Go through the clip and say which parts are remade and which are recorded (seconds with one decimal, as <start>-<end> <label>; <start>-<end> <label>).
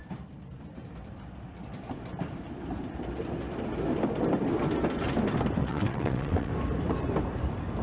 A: 0.0-5.6 recorded; 5.6-6.5 remade; 6.5-7.8 recorded